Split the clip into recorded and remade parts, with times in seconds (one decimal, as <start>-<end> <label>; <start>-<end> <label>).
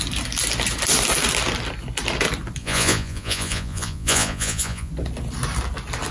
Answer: 0.0-2.6 recorded; 2.6-4.9 remade; 4.9-6.1 recorded